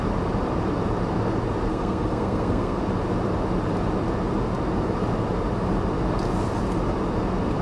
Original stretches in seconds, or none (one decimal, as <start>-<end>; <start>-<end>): 0.0-1.7; 2.8-7.6